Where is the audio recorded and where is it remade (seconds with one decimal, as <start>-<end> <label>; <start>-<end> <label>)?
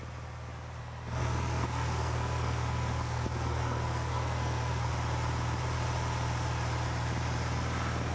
0.0-0.8 recorded; 0.8-4.9 remade; 4.9-8.1 recorded